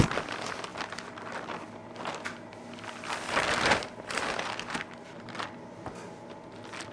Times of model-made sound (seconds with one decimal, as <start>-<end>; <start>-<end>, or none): none